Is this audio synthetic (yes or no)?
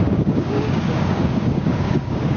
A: yes